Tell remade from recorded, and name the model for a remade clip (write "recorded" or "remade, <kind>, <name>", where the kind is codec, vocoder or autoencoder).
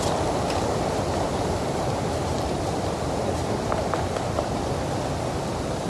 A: recorded